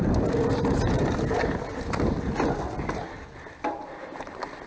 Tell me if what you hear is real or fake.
real